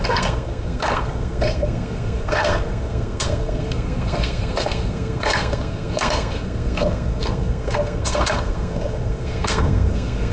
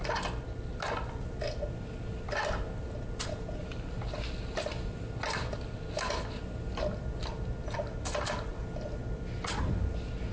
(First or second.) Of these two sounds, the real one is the second